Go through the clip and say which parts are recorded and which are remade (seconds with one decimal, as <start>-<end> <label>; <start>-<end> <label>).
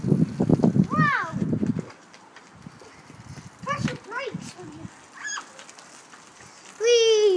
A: 0.0-7.4 recorded